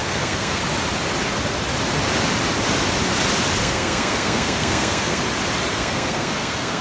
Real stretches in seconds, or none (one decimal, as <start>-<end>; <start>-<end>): 0.6-3.6; 5.2-5.7